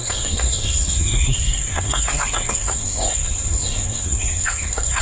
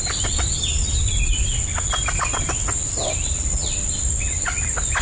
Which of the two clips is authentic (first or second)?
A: second